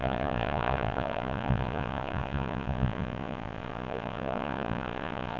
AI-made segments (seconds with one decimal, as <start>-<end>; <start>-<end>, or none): 0.0-5.4